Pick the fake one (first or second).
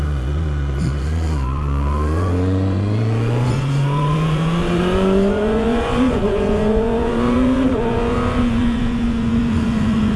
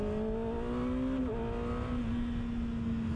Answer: first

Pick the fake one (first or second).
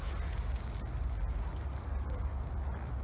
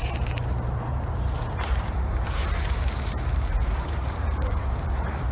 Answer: second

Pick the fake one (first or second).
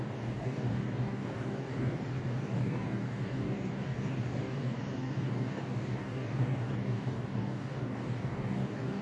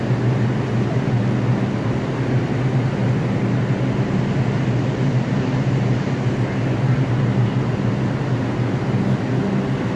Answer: first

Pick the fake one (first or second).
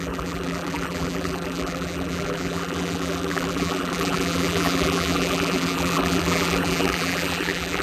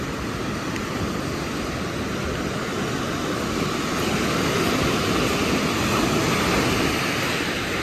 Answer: first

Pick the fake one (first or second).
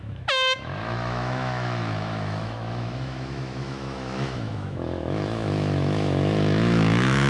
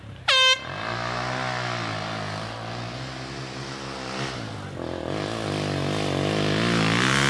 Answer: first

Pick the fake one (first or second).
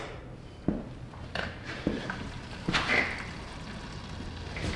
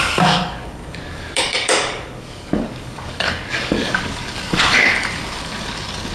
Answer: second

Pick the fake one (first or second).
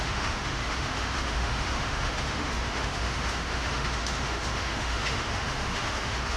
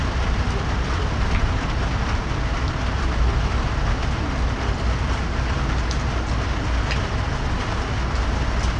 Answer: first